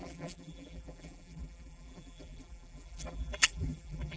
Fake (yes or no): yes